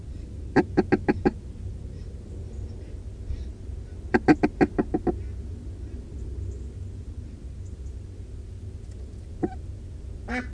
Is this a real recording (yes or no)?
yes